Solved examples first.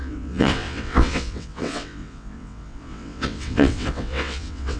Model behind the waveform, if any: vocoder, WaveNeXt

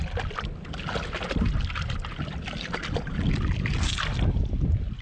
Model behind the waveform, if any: none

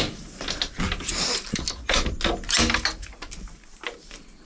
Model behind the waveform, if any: none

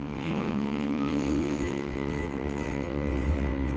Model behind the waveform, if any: vocoder, WaveNeXt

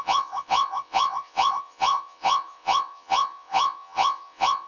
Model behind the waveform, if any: vocoder, WaveNeXt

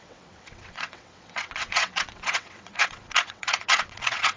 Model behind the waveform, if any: vocoder, WaveNeXt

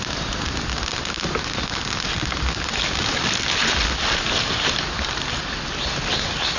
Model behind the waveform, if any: none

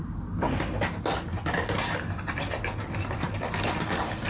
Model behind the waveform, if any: none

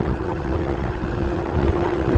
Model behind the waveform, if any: vocoder, WaveNeXt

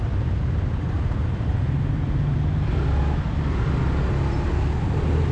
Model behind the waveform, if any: none